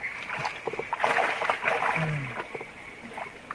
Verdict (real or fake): real